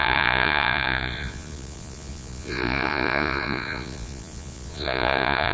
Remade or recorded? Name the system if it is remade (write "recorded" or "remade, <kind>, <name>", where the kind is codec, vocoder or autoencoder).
remade, vocoder, Vocos